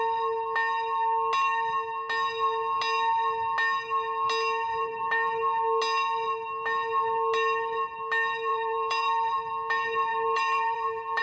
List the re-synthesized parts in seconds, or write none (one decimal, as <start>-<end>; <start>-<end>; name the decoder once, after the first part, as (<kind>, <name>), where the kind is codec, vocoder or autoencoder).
4.7-5.3 (vocoder, BigVGAN v2); 8.5-9.5; 10.1-11.2